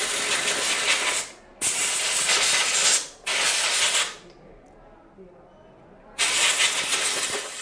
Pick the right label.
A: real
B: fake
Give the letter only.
A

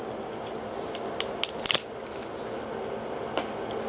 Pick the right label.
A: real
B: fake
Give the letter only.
A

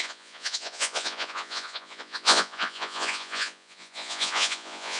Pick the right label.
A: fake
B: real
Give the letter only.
A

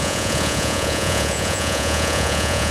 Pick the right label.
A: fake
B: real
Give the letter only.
A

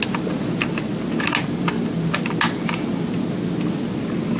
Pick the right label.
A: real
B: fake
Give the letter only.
A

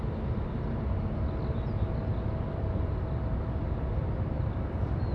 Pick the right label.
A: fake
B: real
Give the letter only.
B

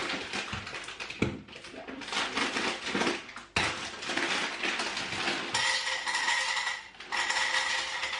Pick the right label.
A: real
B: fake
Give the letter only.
A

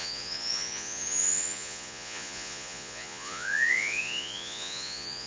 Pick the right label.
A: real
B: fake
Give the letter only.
B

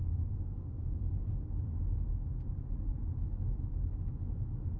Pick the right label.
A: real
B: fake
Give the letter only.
A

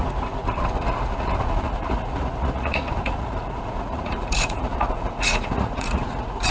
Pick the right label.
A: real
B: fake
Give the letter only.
B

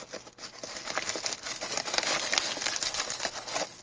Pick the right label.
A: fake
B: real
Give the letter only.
B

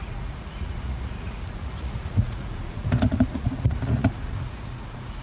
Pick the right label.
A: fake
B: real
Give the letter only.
A